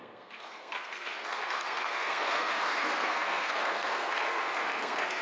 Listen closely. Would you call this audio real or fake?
fake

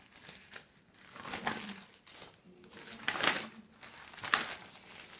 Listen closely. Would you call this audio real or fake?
real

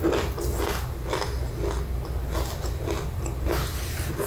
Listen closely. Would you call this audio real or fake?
real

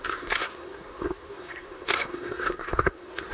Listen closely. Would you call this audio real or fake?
fake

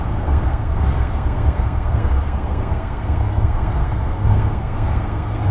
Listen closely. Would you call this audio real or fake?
fake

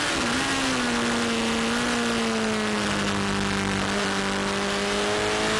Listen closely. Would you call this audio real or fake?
real